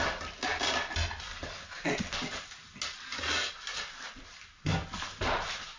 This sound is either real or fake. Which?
real